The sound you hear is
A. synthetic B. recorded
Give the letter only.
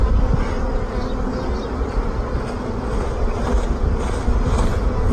B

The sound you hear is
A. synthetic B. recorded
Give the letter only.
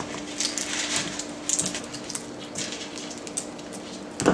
B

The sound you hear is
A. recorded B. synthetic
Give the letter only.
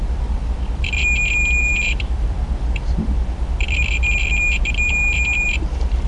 B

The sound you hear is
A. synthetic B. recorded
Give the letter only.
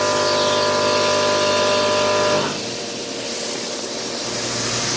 B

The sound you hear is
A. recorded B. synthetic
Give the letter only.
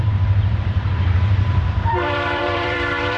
B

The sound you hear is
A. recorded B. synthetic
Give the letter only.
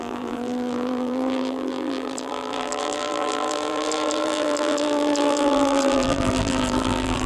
B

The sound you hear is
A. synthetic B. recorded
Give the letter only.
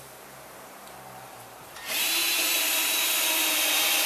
A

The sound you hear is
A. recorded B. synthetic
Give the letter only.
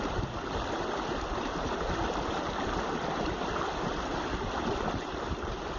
B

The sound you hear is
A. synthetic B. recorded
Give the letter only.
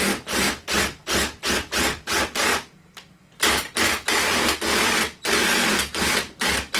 B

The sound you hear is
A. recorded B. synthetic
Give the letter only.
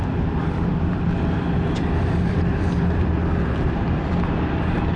B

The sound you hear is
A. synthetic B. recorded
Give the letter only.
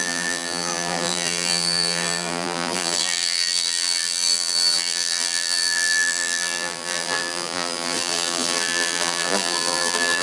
A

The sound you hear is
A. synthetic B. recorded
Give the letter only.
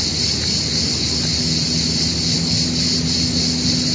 B